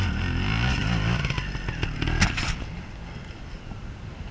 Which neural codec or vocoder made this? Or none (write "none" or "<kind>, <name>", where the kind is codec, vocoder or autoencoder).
none